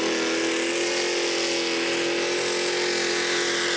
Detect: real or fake real